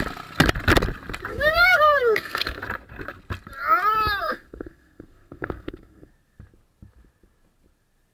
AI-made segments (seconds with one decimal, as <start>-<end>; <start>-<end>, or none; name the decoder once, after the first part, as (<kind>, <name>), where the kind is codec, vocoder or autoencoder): 1.3-2.6 (codec, SNAC); 4.2-6.1